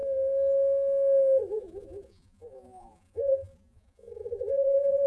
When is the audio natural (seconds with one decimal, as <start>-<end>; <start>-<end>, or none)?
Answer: 0.0-1.5